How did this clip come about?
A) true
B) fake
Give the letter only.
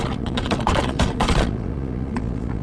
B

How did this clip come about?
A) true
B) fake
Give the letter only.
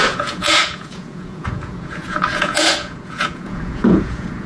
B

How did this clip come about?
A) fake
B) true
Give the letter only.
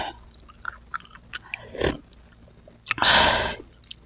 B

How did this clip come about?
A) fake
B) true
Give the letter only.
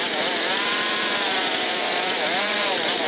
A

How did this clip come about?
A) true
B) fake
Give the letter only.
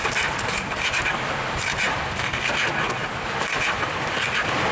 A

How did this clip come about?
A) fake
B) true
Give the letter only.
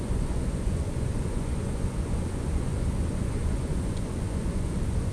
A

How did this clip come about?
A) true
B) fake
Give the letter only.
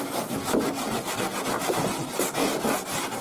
A